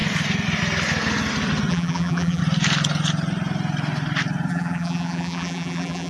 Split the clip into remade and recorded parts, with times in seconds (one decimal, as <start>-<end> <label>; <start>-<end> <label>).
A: 0.0-1.7 recorded; 1.7-2.4 remade; 2.4-4.5 recorded; 4.5-6.1 remade